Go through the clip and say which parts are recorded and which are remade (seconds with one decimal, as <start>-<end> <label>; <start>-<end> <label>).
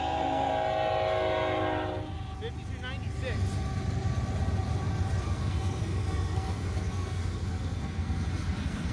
0.0-0.5 remade; 0.5-5.2 recorded; 5.2-8.9 remade